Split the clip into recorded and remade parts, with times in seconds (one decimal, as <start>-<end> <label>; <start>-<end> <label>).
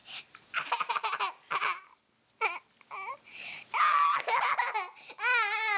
0.0-5.8 recorded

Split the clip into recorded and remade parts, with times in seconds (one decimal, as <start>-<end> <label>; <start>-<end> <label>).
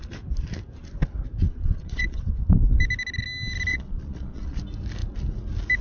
0.0-1.4 recorded; 1.4-2.3 remade; 2.3-3.7 recorded; 3.7-4.6 remade; 4.6-5.8 recorded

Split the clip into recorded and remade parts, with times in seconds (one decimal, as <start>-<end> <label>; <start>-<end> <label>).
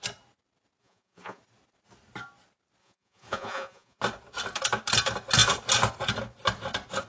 0.0-0.8 recorded; 0.8-1.4 remade; 1.4-2.8 recorded; 2.8-4.0 remade; 4.0-7.1 recorded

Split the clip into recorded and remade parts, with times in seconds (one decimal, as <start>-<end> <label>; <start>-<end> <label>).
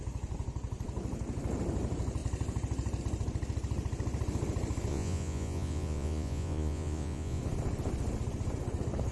0.0-4.9 recorded; 4.9-7.4 remade; 7.4-9.1 recorded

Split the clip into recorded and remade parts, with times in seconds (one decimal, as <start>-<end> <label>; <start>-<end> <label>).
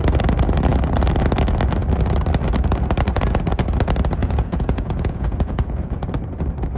0.0-4.2 recorded; 4.2-6.0 remade; 6.0-6.8 recorded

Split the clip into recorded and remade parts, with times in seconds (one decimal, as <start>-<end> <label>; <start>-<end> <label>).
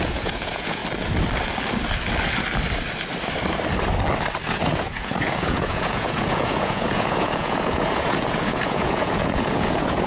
0.0-0.8 remade; 0.8-4.5 recorded; 4.5-10.1 remade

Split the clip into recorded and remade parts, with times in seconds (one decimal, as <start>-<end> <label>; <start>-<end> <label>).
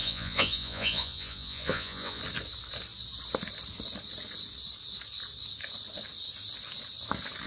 0.0-2.2 remade; 2.2-7.5 recorded